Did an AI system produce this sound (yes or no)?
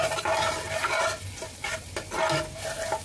no